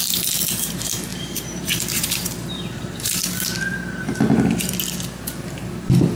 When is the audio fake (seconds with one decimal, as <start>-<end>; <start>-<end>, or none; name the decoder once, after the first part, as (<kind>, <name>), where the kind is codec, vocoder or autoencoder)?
1.1-4.8 (vocoder, BigVGAN v2)